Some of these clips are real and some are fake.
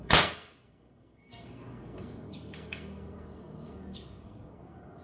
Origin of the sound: fake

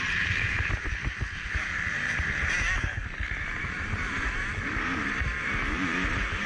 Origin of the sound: fake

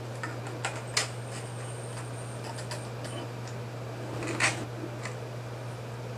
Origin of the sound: real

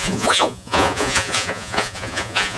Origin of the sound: fake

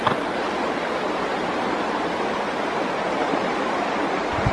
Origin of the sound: real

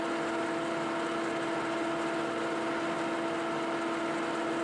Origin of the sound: real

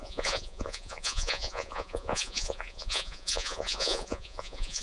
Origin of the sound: fake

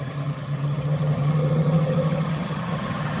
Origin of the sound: fake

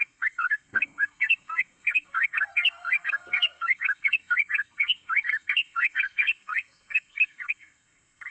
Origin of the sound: fake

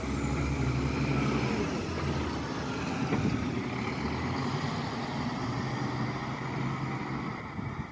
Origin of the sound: real